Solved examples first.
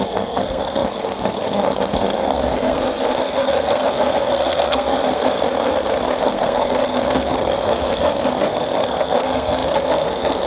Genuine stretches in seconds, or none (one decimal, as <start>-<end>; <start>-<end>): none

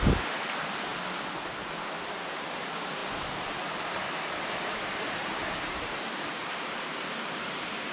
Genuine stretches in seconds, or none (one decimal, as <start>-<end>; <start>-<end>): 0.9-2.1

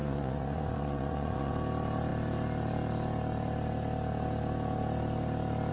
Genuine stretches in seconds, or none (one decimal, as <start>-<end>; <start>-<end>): 1.5-5.7

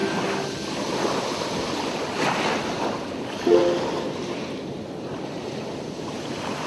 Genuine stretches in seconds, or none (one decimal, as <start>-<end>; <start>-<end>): 0.0-1.9; 3.6-4.2

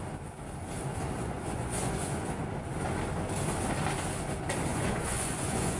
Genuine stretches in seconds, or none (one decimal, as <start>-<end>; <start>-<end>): 0.0-1.2; 2.3-4.7